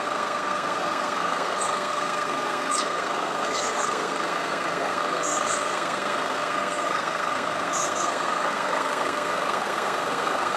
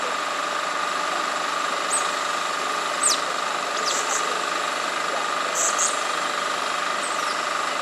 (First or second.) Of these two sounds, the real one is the second